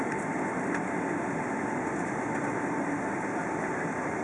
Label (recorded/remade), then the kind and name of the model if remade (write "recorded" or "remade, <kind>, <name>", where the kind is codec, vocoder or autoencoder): remade, vocoder, BigVGAN v2